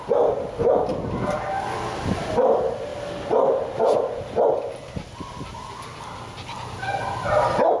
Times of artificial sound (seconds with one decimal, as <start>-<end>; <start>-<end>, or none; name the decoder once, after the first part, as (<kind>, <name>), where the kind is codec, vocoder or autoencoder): none

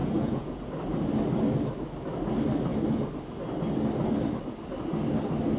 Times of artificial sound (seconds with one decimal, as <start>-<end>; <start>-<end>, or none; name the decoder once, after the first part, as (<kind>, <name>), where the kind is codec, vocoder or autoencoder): 0.0-0.6 (vocoder, Vocos)

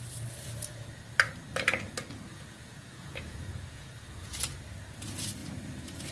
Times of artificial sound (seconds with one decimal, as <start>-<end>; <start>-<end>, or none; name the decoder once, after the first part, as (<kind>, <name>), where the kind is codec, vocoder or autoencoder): 2.3-4.3 (vocoder, Vocos)

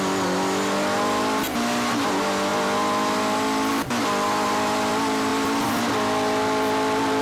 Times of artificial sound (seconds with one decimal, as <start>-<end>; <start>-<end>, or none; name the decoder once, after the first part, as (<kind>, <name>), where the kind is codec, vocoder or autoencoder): 1.4-2.1 (vocoder, BigVGAN v2); 2.5-3.7; 5.3-5.8

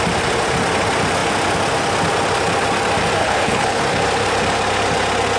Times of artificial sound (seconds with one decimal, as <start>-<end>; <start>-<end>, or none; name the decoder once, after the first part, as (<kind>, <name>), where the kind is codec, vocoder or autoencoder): 3.2-3.8 (codec, HILCodec)

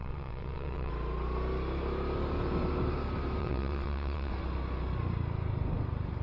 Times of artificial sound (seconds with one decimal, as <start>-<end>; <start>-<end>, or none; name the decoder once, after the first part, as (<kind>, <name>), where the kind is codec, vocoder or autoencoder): 0.0-0.9 (vocoder, WaveNeXt); 3.4-4.3